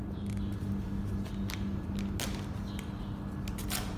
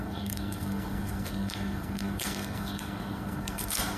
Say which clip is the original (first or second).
first